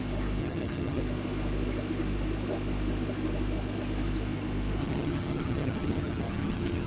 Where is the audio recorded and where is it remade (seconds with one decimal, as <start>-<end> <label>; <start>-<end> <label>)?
0.0-0.4 recorded; 0.4-1.0 remade; 1.0-4.8 recorded; 4.8-6.9 remade